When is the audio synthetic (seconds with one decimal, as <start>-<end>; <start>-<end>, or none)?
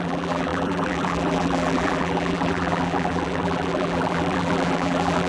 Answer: 0.0-5.3